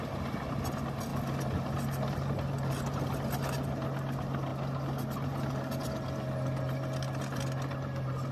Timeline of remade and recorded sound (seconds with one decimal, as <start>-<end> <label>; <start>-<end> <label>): 0.0-8.3 recorded